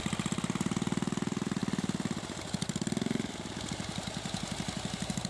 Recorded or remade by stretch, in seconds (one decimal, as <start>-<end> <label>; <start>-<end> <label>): 0.0-5.3 recorded